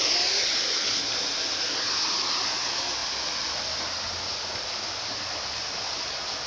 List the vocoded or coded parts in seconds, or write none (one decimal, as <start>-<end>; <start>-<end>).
none